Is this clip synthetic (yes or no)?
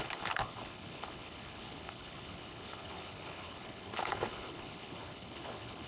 yes